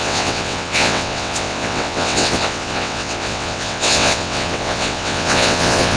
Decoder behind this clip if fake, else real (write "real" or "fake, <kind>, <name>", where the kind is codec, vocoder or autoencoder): fake, vocoder, WaveNeXt